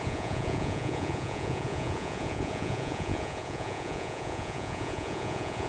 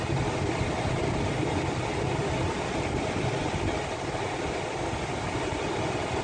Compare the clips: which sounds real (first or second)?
second